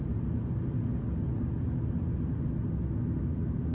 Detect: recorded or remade recorded